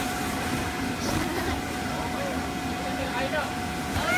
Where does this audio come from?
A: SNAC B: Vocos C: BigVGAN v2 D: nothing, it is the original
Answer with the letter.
D